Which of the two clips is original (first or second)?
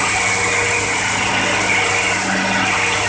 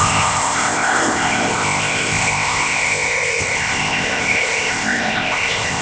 first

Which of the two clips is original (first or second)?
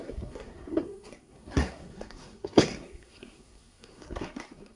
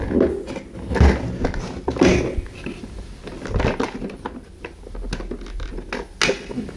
second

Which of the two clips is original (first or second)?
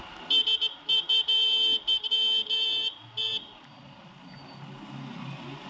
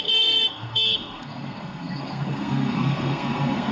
first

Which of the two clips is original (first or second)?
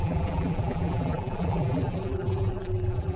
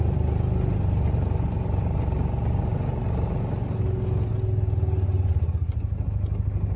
second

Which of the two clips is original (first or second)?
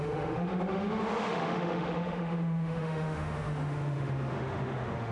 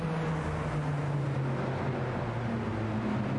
second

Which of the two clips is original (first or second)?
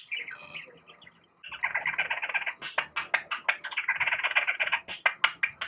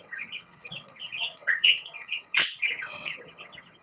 first